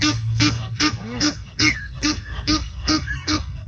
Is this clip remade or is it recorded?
remade